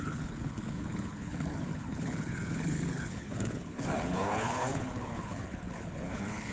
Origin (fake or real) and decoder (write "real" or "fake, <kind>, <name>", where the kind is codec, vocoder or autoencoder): fake, codec, HILCodec